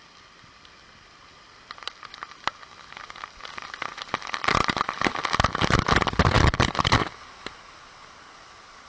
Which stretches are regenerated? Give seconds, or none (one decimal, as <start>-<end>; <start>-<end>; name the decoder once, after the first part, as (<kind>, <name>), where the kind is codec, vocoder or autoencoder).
none